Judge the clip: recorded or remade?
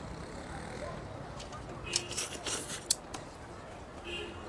remade